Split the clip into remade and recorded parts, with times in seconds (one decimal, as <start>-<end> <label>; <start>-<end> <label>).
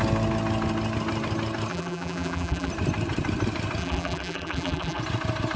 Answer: 0.0-1.7 recorded; 1.7-2.7 remade; 2.7-3.8 recorded; 3.8-5.0 remade; 5.0-5.6 recorded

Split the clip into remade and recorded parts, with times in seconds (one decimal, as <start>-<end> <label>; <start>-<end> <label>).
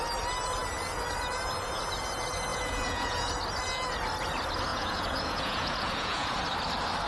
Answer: 0.0-2.5 recorded; 2.5-3.3 remade; 3.3-4.7 recorded; 4.7-6.4 remade; 6.4-7.1 recorded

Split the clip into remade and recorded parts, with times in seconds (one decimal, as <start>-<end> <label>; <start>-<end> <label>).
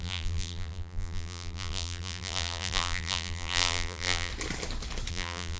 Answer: 0.0-4.3 remade; 4.3-5.1 recorded; 5.1-5.6 remade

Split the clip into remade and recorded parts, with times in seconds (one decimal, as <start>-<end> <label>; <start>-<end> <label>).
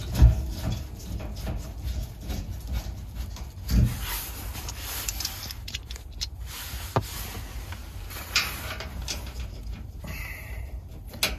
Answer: 0.0-7.8 recorded; 7.8-11.0 remade; 11.0-11.4 recorded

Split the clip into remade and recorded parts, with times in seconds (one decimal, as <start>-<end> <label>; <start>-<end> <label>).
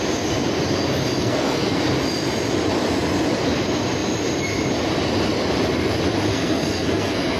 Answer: 0.0-1.2 recorded; 1.2-1.8 remade; 1.8-6.3 recorded; 6.3-7.4 remade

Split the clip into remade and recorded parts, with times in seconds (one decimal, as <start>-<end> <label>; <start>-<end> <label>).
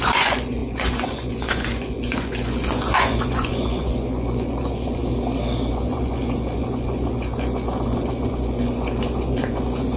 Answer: 0.0-5.0 remade; 5.0-5.7 recorded; 5.7-10.0 remade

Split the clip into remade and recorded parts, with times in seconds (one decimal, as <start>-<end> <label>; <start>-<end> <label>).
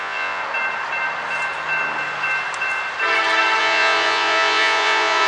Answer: 0.0-0.4 remade; 0.4-3.6 recorded; 3.6-5.3 remade